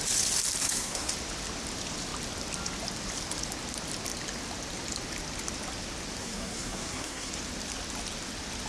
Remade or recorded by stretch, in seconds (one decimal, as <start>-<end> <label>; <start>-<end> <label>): 0.0-0.6 recorded; 0.6-1.1 remade; 1.1-6.2 recorded; 6.2-7.3 remade; 7.3-8.7 recorded